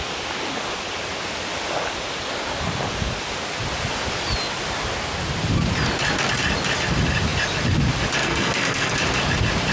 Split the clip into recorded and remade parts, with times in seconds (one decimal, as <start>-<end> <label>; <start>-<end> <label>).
0.0-8.2 recorded; 8.2-8.9 remade; 8.9-9.7 recorded

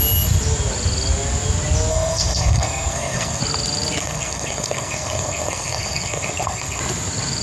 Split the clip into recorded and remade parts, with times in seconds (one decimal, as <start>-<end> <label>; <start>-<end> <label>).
0.0-1.9 recorded; 1.9-3.4 remade; 3.4-4.0 recorded; 4.0-6.8 remade; 6.8-7.4 recorded

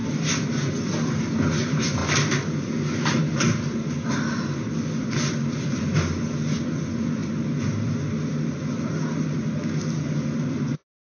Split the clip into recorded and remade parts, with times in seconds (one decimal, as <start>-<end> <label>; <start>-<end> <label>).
0.0-11.1 recorded

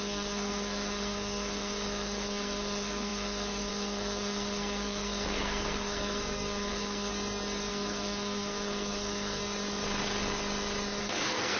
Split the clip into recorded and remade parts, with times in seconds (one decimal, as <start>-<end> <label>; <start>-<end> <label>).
0.0-7.1 remade; 7.1-7.7 recorded; 7.7-9.4 remade; 9.4-11.0 recorded; 11.0-11.6 remade